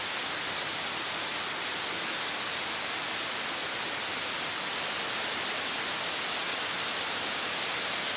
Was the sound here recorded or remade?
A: recorded